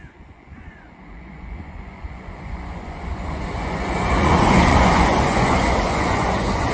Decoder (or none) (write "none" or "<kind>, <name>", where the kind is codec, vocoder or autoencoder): vocoder, Vocos